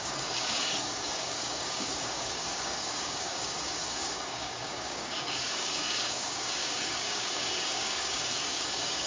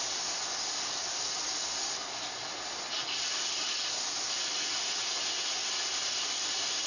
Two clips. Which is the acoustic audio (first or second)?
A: second